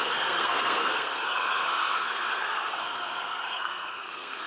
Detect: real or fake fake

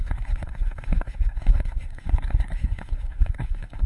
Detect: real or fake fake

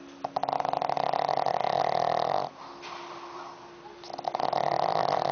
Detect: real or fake real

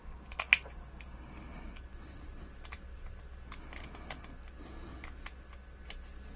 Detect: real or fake real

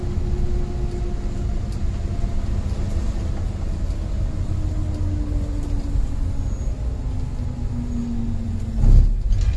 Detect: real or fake real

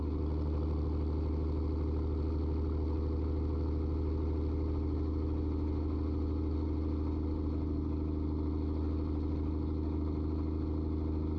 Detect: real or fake real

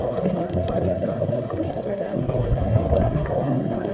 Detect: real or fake fake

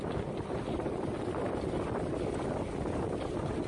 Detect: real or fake real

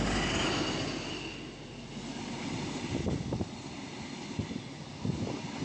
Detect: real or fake real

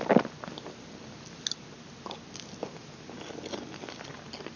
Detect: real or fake real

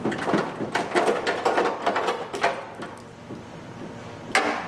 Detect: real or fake real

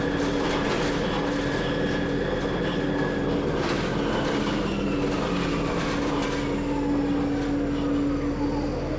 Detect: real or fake real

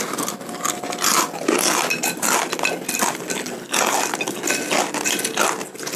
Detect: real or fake real